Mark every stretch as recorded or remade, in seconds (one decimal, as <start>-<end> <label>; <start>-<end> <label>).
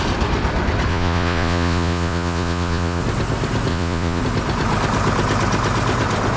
0.0-0.9 recorded; 0.9-3.0 remade; 3.0-3.7 recorded; 3.7-4.2 remade; 4.2-6.4 recorded